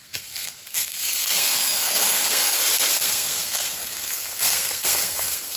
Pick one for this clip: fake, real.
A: fake